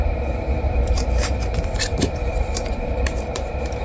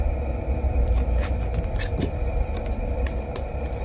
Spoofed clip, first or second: first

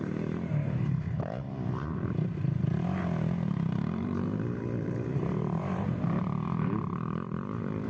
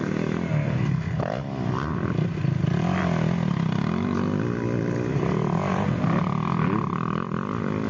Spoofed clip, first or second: first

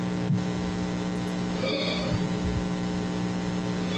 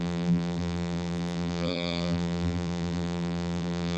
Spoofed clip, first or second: second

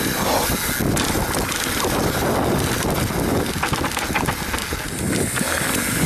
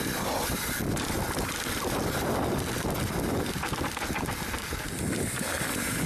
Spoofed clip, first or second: second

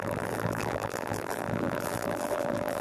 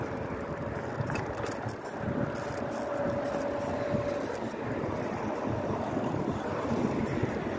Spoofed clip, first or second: first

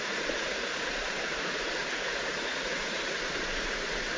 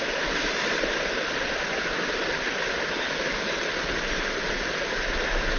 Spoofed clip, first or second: first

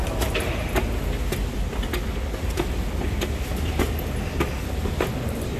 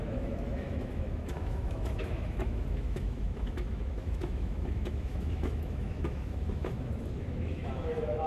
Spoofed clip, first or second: second